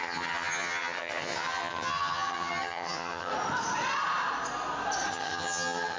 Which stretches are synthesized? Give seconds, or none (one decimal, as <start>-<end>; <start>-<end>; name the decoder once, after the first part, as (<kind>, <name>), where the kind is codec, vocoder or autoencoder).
0.0-3.3 (vocoder, HiFi-GAN); 5.1-6.0